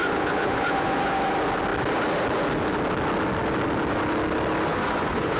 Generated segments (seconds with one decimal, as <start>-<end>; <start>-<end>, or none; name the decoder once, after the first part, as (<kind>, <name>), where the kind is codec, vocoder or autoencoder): 0.0-1.2 (vocoder, Vocos); 4.7-5.4